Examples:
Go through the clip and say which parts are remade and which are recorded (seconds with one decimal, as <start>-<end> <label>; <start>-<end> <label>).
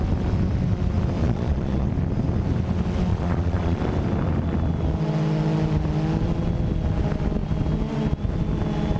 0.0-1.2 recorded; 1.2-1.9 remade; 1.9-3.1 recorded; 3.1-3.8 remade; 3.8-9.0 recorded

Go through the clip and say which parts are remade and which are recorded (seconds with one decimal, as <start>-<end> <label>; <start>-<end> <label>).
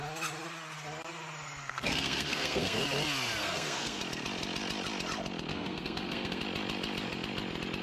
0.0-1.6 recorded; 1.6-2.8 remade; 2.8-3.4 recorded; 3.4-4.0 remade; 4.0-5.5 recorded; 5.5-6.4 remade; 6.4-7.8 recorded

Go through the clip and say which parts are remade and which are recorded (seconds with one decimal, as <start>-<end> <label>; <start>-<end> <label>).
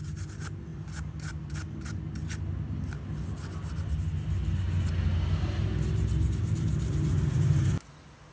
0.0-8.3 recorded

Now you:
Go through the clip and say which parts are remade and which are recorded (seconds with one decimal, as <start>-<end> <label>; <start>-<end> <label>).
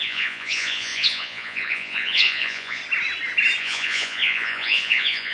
0.0-2.8 remade; 2.8-3.6 recorded; 3.6-5.3 remade